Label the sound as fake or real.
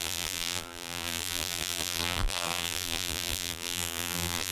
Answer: fake